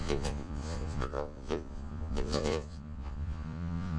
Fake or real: fake